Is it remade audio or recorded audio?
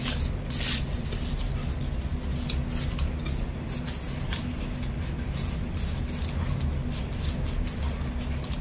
recorded